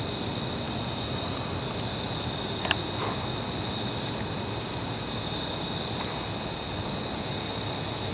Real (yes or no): yes